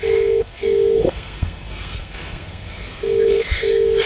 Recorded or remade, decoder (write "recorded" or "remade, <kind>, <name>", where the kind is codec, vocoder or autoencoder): remade, codec, SNAC